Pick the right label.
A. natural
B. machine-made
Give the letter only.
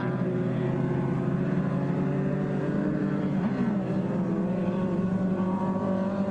A